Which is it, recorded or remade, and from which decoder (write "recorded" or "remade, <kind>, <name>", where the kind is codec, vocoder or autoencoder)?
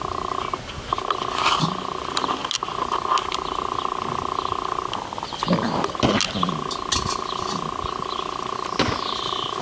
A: recorded